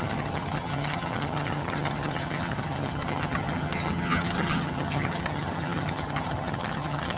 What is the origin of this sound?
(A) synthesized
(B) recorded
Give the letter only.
A